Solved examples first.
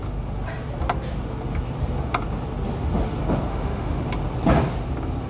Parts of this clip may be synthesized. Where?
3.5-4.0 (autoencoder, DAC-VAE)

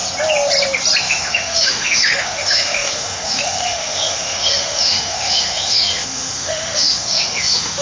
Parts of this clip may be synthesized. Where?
1.0-7.8 (autoencoder, DAC-VAE)

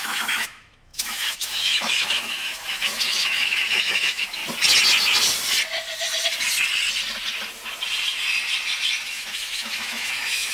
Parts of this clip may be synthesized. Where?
0.0-4.4 (autoencoder, DAC-VAE); 9.1-10.5

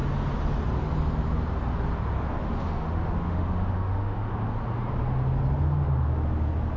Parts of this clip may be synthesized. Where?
2.4-4.3 (autoencoder, DAC-VAE)

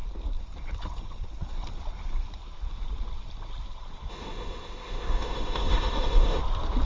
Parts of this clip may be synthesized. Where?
4.1-6.4 (autoencoder, DAC-VAE)

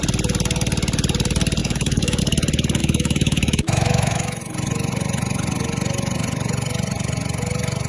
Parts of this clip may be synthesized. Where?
1.6-2.2 (autoencoder, DAC-VAE); 2.8-4.4